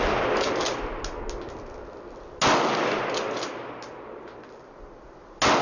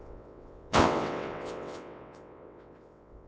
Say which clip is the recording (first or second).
first